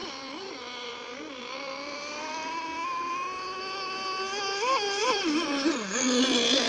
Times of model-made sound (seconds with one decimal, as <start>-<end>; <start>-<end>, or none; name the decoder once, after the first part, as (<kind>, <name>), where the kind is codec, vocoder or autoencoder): 0.0-2.5 (vocoder, BigVGAN v2); 5.0-6.2

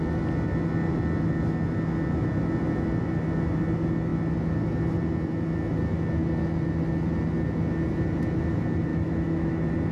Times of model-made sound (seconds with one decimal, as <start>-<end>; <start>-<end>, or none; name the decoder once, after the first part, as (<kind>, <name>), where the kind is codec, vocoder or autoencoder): 8.9-9.5 (autoencoder, DAC-VAE)

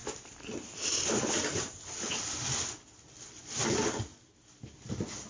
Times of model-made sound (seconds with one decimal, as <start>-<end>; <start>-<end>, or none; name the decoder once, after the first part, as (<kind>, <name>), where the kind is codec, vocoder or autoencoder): none

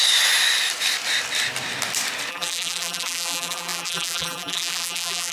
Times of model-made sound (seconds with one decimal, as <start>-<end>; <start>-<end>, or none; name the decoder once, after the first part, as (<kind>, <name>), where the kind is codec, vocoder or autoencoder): 2.3-5.3 (vocoder, BigVGAN v2)

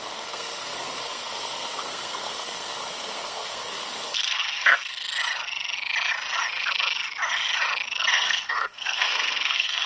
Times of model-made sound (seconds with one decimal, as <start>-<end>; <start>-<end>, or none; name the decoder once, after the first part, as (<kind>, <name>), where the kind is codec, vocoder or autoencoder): 0.0-5.0 (codec, SNAC); 8.1-9.9

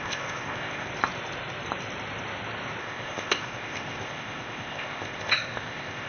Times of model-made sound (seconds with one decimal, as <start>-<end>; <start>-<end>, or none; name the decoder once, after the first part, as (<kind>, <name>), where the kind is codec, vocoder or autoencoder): 0.0-0.9 (codec, ZipCodec); 2.8-6.1

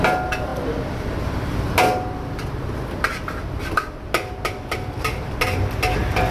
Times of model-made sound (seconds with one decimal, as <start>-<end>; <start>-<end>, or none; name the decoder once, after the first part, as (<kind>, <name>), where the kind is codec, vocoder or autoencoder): none